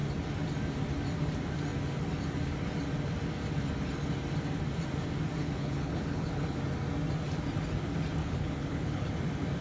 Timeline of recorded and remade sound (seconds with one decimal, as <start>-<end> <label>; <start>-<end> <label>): 0.0-5.4 recorded; 5.4-6.6 remade; 6.6-8.2 recorded; 8.2-9.0 remade; 9.0-9.6 recorded